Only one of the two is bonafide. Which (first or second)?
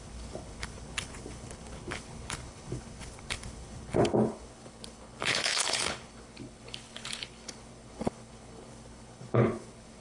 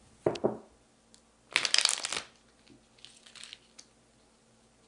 second